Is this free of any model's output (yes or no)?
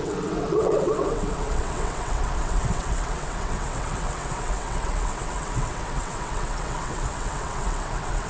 no